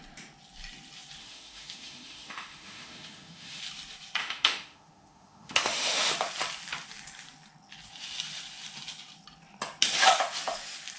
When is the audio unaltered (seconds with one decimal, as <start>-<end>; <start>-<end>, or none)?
0.0-1.2; 3.6-4.2; 6.1-11.0